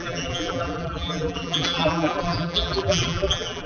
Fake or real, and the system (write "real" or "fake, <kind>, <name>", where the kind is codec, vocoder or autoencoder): fake, vocoder, BigVGAN v2